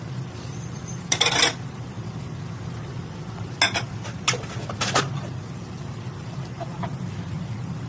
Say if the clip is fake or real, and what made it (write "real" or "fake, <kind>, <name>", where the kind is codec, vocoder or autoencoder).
real